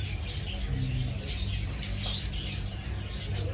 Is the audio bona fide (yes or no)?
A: yes